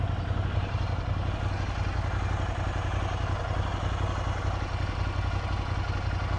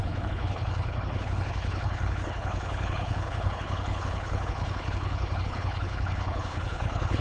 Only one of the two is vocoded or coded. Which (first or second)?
second